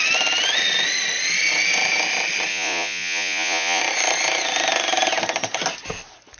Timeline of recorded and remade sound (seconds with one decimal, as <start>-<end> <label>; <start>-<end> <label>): 0.0-2.5 recorded; 2.5-3.8 remade; 3.8-6.4 recorded